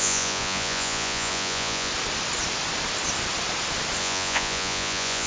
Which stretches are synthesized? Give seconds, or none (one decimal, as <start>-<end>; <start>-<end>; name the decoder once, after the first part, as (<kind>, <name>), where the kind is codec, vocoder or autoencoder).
0.0-1.9 (vocoder, Vocos); 4.0-5.3